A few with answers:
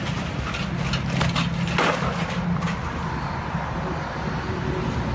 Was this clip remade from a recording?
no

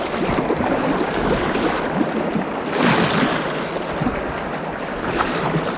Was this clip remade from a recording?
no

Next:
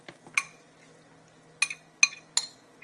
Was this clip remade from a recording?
no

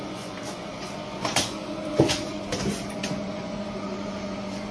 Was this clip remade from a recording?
yes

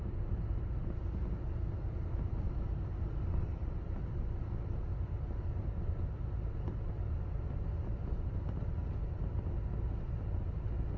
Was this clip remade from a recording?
no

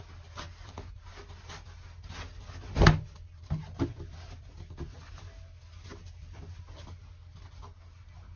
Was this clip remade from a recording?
no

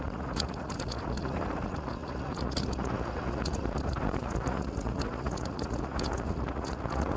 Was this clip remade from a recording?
yes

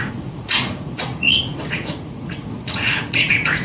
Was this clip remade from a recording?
yes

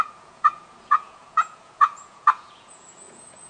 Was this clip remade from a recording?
yes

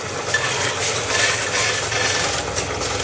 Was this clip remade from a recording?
no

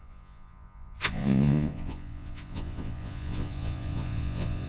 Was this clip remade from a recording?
yes